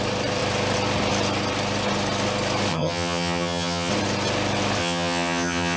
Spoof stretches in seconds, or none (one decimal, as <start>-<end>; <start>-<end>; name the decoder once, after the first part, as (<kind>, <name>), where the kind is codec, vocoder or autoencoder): 2.7-3.9 (vocoder, HiFi-GAN); 4.8-5.8